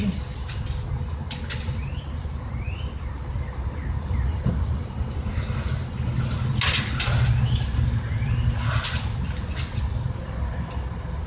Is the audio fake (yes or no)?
no